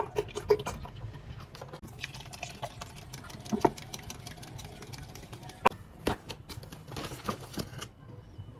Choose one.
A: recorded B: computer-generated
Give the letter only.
A